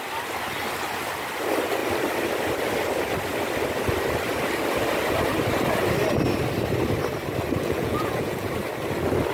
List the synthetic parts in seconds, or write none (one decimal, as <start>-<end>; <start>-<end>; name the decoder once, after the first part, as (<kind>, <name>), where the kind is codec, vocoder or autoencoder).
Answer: 7.6-8.5 (vocoder, Vocos)